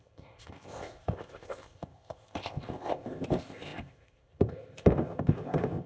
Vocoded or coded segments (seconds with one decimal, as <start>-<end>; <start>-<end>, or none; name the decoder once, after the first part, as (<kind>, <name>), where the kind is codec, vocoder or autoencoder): 0.0-5.9 (codec, ZipCodec)

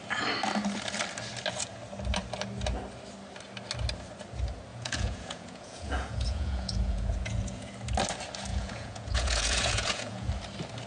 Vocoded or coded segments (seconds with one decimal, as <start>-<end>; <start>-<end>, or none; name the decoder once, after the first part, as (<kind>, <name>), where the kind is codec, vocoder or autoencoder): 4.7-7.7 (vocoder, Vocos); 8.5-10.3

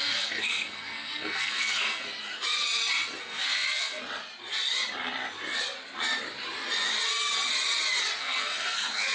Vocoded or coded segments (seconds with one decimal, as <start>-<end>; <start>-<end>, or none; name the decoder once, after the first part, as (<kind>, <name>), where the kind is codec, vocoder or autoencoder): 0.0-2.1 (codec, SNAC); 3.2-4.0; 8.2-9.1

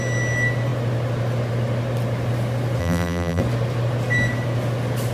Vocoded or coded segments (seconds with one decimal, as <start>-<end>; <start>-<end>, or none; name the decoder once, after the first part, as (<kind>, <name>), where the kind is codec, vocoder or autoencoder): 2.8-3.4 (vocoder, BigVGAN v2)